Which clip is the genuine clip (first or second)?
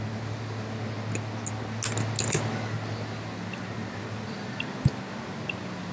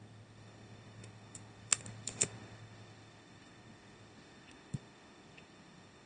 first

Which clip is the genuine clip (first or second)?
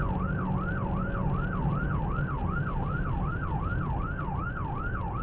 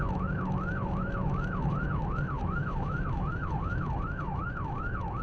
first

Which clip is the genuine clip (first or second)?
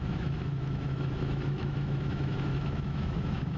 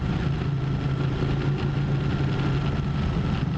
second